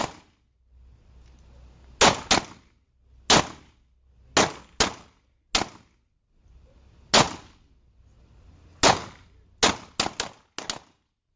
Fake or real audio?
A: real